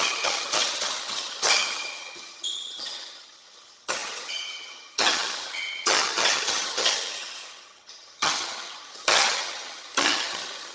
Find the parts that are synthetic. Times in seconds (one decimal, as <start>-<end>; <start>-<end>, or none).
0.0-10.7